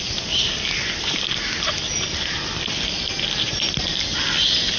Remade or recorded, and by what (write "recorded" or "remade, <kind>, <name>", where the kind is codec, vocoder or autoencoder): recorded